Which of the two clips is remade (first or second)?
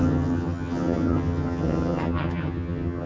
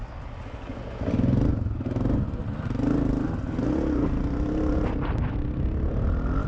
first